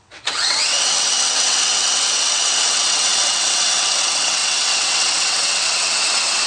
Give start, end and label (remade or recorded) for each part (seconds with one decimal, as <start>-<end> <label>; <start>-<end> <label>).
0.0-6.5 remade